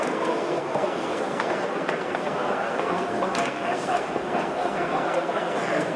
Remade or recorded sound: remade